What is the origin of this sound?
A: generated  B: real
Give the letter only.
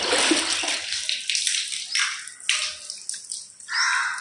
B